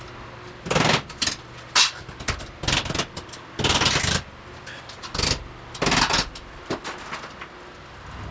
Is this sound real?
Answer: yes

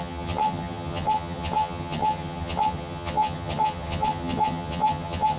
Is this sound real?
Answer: no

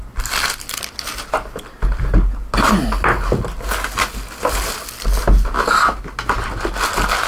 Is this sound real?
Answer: yes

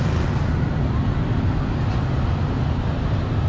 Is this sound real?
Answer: yes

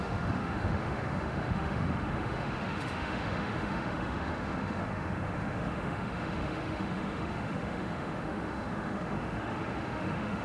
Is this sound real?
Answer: no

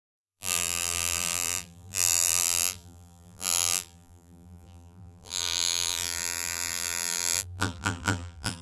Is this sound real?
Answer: no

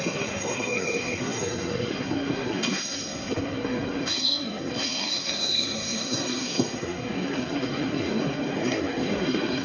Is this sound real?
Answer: no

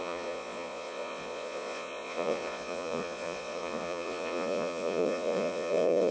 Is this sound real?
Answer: no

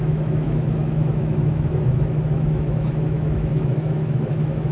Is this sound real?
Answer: no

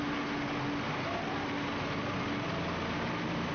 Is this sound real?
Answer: yes